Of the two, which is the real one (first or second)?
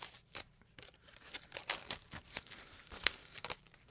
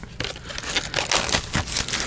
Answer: second